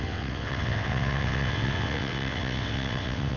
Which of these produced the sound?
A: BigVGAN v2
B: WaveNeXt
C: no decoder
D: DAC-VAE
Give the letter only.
B